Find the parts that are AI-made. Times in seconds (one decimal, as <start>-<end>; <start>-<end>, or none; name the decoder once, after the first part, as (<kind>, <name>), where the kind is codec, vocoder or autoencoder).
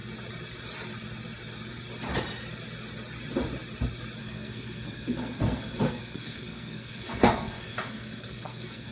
4.2-8.9 (codec, SNAC)